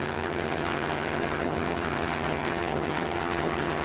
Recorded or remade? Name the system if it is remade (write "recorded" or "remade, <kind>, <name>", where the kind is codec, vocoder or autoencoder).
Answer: remade, vocoder, HiFi-GAN